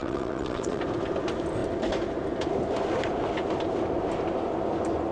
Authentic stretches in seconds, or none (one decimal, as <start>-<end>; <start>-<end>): 0.8-5.1